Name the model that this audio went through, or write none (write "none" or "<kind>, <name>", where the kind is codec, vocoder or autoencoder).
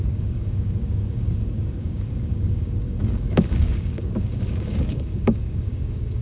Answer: codec, DAC